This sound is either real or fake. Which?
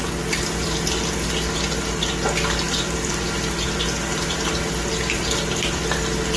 real